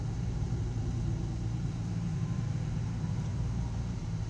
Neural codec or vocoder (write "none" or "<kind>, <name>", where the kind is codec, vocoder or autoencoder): vocoder, BigVGAN v2